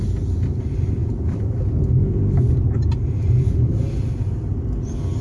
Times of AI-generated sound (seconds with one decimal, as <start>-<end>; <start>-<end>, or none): none